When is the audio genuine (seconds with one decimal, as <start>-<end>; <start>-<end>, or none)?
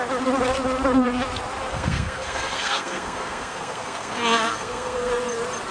0.0-1.7; 5.1-5.7